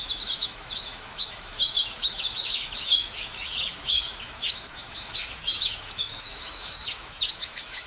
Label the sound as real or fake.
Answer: fake